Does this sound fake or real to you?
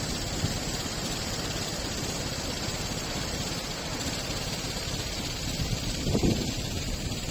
fake